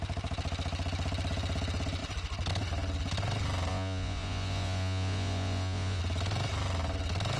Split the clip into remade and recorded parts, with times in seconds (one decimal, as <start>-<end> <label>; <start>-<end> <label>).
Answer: 0.0-3.7 recorded; 3.7-6.0 remade; 6.0-7.4 recorded